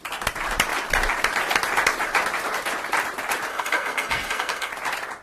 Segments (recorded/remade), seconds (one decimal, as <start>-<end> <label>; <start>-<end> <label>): 0.0-3.5 recorded; 3.5-4.7 remade; 4.7-5.2 recorded